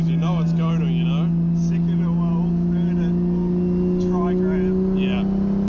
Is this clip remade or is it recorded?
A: recorded